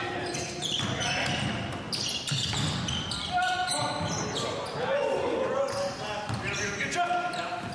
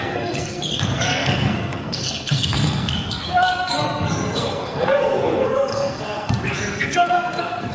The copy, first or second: second